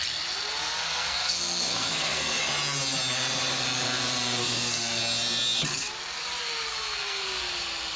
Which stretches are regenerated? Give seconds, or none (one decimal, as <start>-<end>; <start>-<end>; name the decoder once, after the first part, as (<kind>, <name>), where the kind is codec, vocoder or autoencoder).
0.6-2.4 (codec, SNAC); 4.4-5.0; 6.7-7.4